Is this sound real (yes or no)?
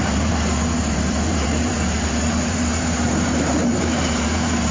no